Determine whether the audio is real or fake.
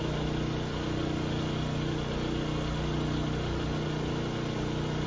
real